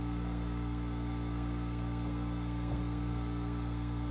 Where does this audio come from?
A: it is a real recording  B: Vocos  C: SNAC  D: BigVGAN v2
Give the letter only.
C